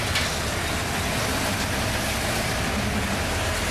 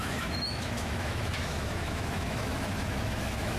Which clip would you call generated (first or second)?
second